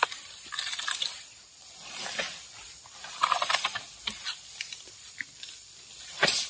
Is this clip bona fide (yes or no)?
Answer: no